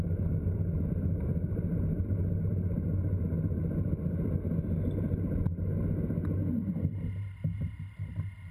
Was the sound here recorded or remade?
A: recorded